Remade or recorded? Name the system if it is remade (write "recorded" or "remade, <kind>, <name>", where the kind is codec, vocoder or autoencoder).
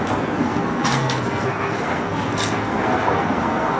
remade, codec, SNAC